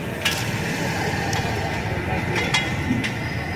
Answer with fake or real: real